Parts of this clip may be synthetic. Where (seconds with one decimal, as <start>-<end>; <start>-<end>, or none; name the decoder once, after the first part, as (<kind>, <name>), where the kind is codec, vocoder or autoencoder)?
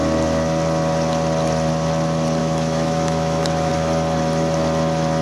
2.4-3.7 (autoencoder, DAC-VAE)